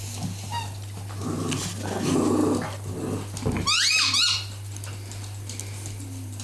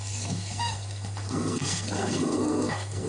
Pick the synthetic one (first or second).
second